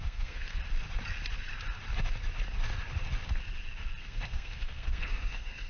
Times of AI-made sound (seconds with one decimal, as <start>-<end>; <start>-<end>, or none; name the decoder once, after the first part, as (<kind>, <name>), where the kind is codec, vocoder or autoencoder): 0.0-0.6 (codec, SNAC); 4.0-5.7

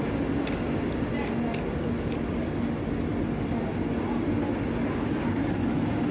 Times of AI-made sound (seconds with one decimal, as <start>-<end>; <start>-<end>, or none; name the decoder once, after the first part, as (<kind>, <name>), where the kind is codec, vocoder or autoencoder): none

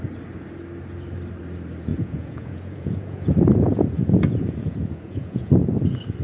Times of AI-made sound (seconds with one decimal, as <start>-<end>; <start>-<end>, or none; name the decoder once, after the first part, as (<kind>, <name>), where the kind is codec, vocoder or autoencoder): 1.9-5.5 (vocoder, Vocos)

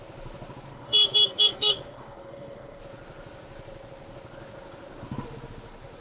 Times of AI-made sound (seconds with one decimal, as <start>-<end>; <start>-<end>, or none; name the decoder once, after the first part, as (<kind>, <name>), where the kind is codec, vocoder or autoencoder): 0.7-2.8 (codec, SNAC)